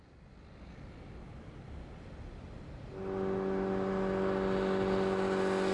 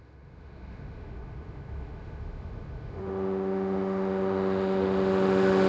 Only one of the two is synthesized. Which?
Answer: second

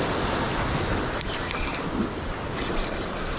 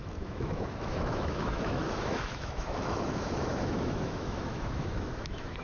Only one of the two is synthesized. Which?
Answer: second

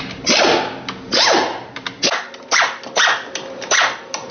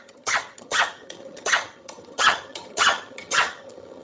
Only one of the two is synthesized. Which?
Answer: second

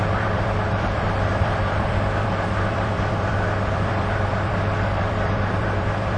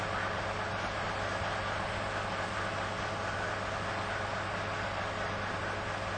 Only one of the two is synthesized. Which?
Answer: first